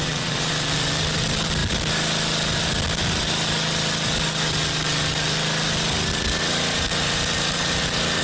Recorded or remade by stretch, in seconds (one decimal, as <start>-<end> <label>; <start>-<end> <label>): 0.0-0.5 remade; 0.5-8.2 recorded